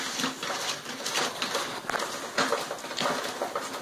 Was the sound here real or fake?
real